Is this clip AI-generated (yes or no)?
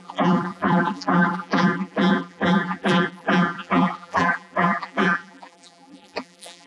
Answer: yes